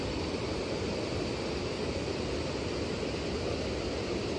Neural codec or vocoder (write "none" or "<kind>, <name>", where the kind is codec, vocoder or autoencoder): none